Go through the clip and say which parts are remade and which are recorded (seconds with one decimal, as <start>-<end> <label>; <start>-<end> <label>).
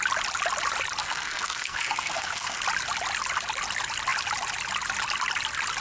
0.0-1.0 recorded; 1.0-2.6 remade; 2.6-5.8 recorded